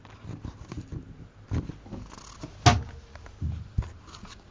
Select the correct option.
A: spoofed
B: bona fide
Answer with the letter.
B